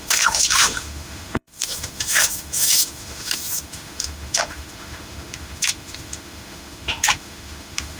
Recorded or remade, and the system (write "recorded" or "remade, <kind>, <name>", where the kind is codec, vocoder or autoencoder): remade, autoencoder, DAC-VAE